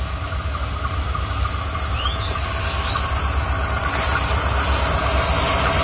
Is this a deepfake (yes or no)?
no